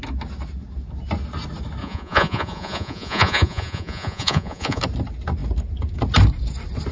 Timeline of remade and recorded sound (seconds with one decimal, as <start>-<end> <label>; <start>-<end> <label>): 0.0-1.8 recorded; 1.8-4.8 remade; 4.8-6.9 recorded